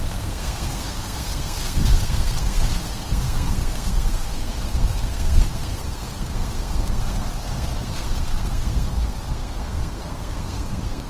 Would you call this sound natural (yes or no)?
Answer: no